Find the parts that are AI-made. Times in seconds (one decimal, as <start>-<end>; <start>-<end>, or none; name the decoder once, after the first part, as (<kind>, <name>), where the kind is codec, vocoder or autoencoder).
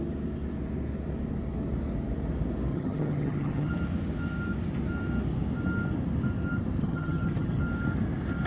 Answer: 2.7-3.7 (vocoder, HiFi-GAN); 6.8-7.6